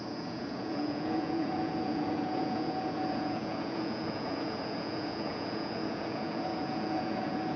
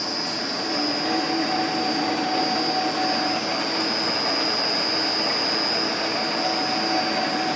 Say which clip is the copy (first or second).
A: first